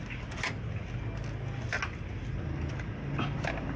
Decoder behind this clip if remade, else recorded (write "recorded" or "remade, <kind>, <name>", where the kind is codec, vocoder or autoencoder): recorded